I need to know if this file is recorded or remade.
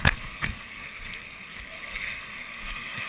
remade